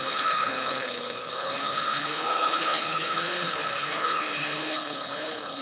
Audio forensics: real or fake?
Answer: fake